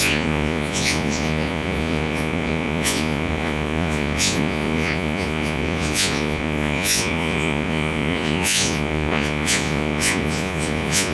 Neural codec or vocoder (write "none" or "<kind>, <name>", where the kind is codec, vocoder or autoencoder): vocoder, Vocos